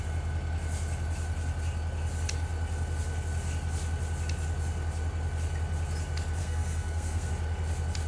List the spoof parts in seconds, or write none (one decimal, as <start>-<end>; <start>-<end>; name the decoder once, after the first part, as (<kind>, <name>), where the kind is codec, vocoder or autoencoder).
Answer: 6.4-7.3 (codec, SNAC)